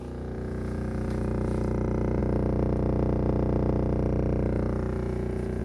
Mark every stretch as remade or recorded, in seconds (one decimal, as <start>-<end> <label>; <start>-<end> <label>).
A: 0.0-5.6 remade